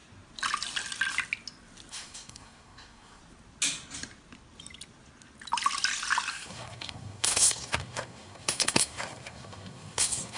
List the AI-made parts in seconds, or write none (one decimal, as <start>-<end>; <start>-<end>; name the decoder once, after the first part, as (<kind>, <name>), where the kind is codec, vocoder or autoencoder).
1.9-3.2 (codec, SNAC); 6.3-10.4